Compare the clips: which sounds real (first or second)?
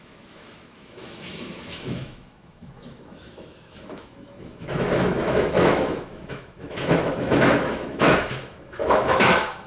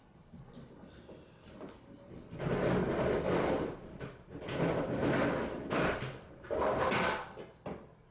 second